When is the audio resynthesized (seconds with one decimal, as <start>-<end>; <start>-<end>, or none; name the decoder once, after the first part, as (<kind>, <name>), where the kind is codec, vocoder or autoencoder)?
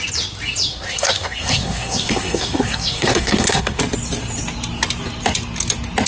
0.7-3.8 (codec, SNAC)